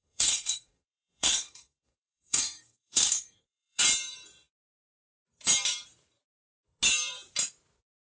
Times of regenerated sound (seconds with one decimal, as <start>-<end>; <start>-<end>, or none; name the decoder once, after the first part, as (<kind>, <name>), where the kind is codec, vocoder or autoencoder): 0.0-3.8 (codec, SNAC)